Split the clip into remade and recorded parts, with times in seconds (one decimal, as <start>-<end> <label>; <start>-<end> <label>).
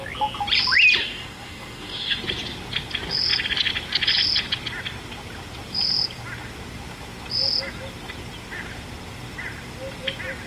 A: 0.0-1.0 recorded; 1.0-2.2 remade; 2.2-10.5 recorded